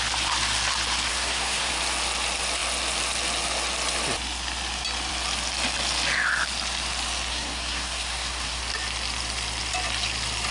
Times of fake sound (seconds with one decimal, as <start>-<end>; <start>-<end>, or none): 1.1-1.7; 7.3-8.6